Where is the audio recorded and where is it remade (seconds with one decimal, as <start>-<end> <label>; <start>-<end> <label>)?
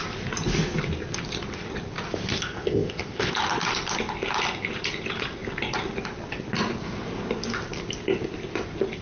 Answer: 0.0-2.3 recorded; 2.3-3.3 remade; 3.3-9.0 recorded